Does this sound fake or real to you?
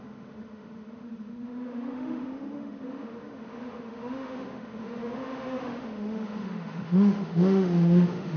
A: fake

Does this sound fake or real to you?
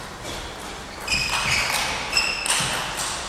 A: real